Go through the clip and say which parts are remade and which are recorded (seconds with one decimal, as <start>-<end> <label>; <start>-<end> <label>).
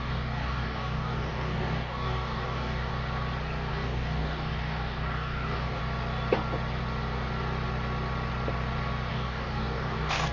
0.0-2.9 remade; 2.9-3.7 recorded; 3.7-5.8 remade; 5.8-9.1 recorded; 9.1-10.3 remade